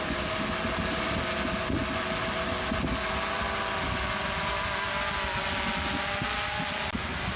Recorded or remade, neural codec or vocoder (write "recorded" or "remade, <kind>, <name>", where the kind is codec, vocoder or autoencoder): recorded